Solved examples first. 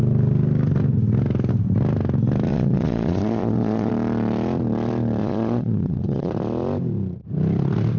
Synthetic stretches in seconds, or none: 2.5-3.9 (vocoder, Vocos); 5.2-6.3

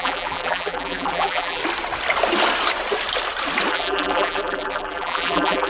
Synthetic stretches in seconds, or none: 0.0-1.6 (vocoder, BigVGAN v2); 3.7-5.7